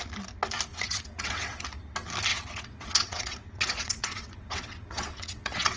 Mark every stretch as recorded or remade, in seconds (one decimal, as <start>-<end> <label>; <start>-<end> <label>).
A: 0.0-0.7 recorded; 0.7-1.6 remade; 1.6-2.3 recorded; 2.3-5.8 remade